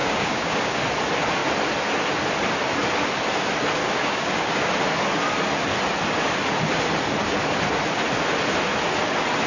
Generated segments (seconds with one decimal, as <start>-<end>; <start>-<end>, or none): 0.0-0.8; 3.8-4.7